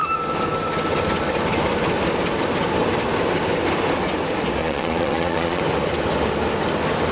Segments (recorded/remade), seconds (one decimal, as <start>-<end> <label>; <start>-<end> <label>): 0.0-4.6 recorded; 4.6-5.6 remade; 5.6-7.1 recorded